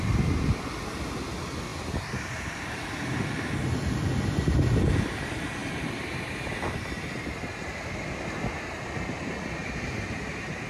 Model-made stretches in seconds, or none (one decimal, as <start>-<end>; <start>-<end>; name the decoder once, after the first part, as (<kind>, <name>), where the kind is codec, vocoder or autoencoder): 1.7-4.2 (vocoder, BigVGAN v2); 5.6-6.5; 9.6-10.2